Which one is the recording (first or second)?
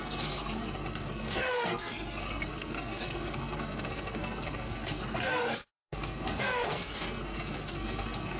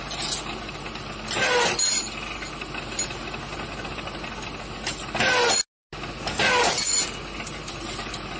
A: second